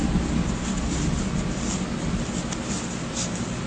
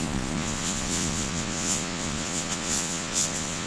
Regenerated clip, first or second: second